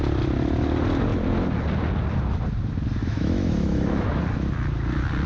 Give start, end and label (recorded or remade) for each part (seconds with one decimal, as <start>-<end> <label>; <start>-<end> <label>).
0.0-3.0 recorded; 3.0-4.2 remade; 4.2-5.3 recorded